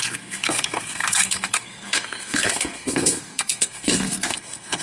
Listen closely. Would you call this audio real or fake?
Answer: fake